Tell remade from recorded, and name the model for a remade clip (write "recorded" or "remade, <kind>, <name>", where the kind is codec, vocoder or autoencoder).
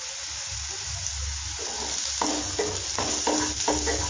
recorded